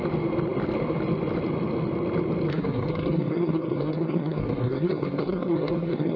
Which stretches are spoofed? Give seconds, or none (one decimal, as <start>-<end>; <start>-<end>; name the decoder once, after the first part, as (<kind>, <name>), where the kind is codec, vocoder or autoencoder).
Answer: 2.5-6.2 (codec, SNAC)